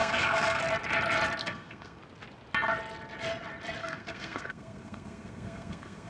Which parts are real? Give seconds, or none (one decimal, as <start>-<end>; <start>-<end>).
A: 0.6-1.4; 2.0-3.8